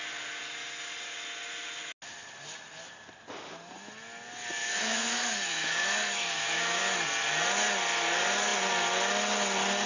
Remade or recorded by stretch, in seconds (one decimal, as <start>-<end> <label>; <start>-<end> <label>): 0.0-4.6 recorded; 4.6-6.8 remade; 6.8-9.9 recorded

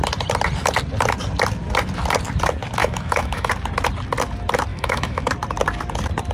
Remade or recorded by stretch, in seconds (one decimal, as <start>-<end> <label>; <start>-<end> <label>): 0.0-2.8 recorded; 2.8-3.5 remade; 3.5-4.7 recorded; 4.7-5.3 remade; 5.3-6.3 recorded

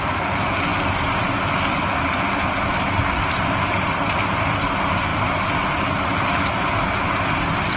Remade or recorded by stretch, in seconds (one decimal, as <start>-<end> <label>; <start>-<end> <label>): 0.0-7.8 recorded

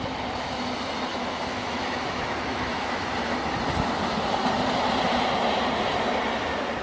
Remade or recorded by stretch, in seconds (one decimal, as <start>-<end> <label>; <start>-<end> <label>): 0.0-1.1 recorded; 1.1-3.0 remade; 3.0-6.8 recorded

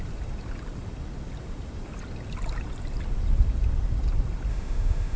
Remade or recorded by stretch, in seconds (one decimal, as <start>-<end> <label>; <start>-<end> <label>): 0.0-4.5 recorded; 4.5-5.2 remade

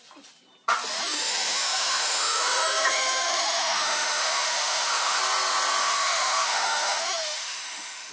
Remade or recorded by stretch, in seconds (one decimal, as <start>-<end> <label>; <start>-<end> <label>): 0.0-1.0 recorded; 1.0-5.2 remade; 5.2-5.8 recorded; 5.8-8.1 remade

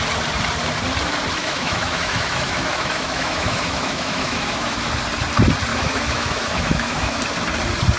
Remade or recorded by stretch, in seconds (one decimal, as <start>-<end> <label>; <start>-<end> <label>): 0.0-1.4 recorded; 1.4-4.9 remade; 4.9-5.7 recorded; 5.7-7.2 remade; 7.2-8.0 recorded